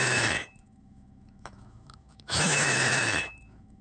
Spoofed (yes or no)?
yes